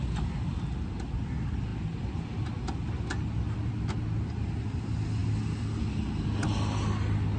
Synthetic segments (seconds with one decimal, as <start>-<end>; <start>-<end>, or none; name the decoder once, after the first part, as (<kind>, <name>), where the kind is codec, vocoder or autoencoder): none